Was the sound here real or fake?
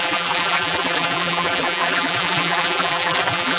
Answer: fake